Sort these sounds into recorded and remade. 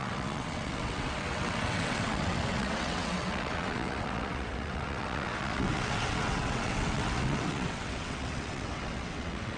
remade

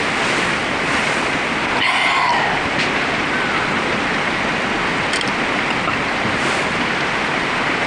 recorded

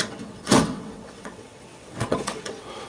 remade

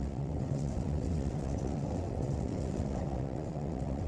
remade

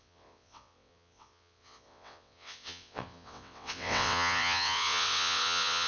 remade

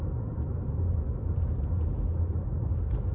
recorded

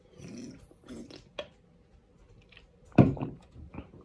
recorded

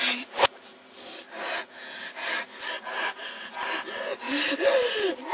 recorded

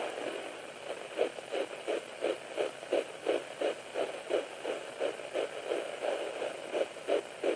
recorded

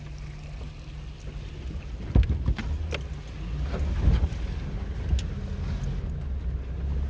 recorded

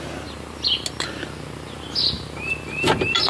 recorded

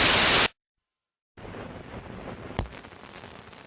recorded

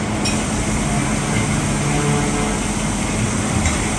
recorded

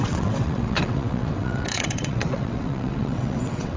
remade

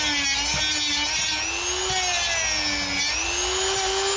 recorded